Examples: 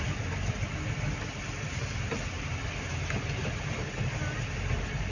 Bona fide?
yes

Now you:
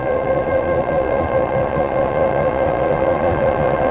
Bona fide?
no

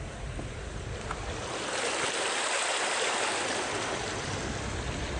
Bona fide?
no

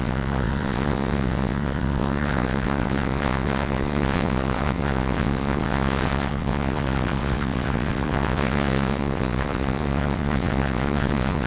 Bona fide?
no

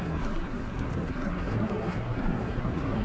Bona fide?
no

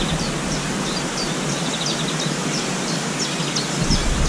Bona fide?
yes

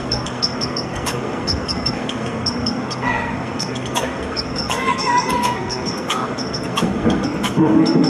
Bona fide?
no